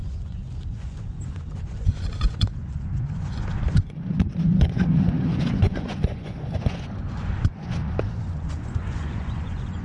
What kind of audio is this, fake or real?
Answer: fake